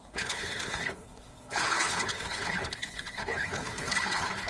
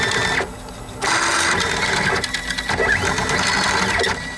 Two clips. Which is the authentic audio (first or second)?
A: second